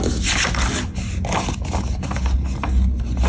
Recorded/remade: recorded